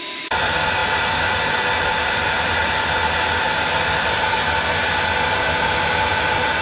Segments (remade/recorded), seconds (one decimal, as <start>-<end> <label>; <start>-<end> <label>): 0.0-6.6 recorded